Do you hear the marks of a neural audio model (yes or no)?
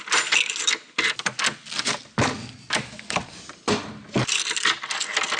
no